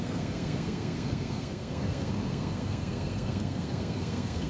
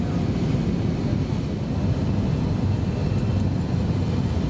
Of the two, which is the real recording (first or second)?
second